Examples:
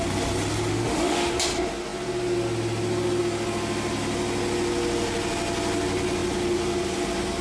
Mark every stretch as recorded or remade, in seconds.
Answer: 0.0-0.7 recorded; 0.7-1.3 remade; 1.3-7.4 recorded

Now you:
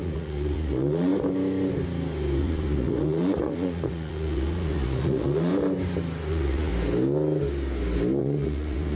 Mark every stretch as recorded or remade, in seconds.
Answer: 0.0-1.1 remade; 1.1-2.4 recorded; 2.4-5.5 remade; 5.5-6.3 recorded; 6.3-6.7 remade; 6.7-8.2 recorded; 8.2-9.0 remade